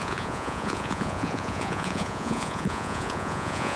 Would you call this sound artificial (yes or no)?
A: yes